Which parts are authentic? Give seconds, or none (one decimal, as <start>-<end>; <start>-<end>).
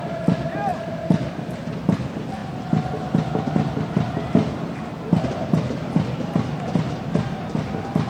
0.0-8.1